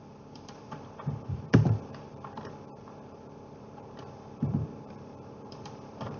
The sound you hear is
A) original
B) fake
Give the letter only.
B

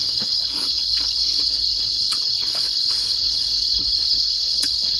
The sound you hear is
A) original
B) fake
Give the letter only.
B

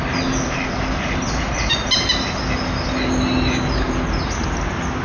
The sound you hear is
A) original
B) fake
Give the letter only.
A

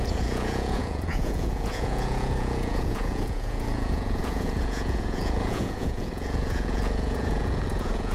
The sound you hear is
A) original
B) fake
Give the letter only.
B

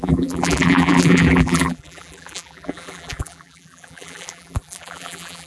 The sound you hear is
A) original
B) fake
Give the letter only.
B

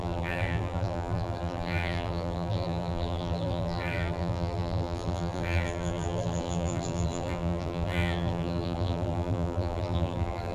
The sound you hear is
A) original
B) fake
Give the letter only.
B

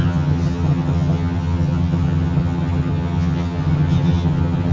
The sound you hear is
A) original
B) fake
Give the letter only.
B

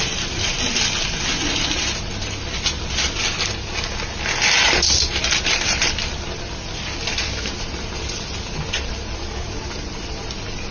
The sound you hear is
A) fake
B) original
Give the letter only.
B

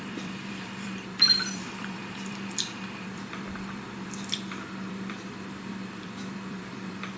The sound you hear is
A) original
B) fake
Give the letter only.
B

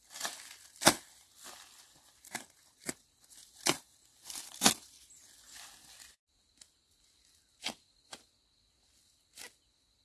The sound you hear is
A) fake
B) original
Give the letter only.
B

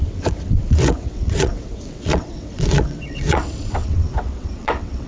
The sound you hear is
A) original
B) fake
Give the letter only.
B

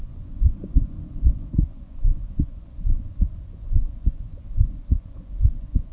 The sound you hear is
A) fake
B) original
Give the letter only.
A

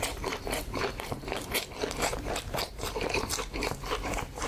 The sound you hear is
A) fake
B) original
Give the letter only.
A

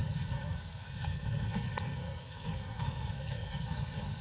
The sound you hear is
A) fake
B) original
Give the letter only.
A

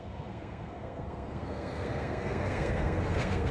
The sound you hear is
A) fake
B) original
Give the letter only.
A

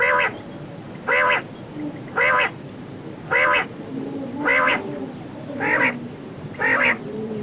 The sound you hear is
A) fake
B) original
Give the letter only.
B